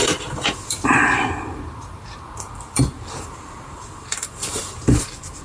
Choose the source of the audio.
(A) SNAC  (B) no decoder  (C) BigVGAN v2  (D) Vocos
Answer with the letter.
C